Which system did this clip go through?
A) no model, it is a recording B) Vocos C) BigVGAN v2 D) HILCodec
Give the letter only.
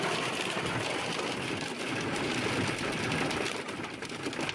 A